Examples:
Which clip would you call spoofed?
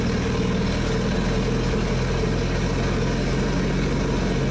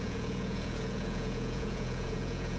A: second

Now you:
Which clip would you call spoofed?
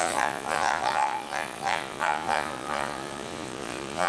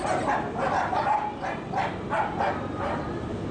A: first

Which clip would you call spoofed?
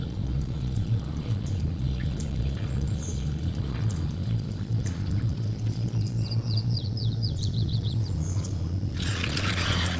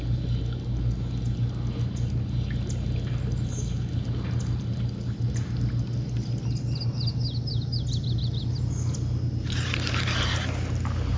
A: first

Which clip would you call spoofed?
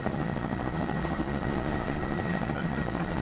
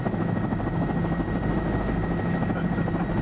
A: first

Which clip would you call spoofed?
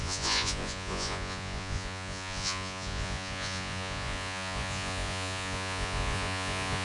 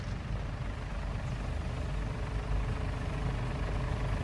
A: first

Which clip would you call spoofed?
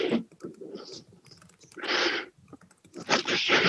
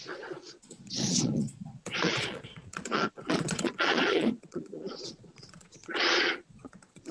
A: second